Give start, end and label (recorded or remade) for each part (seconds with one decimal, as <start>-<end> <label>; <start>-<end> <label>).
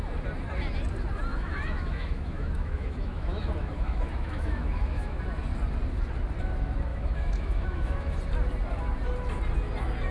0.0-1.3 recorded; 1.3-5.2 remade; 5.2-6.9 recorded; 6.9-8.2 remade; 8.2-10.1 recorded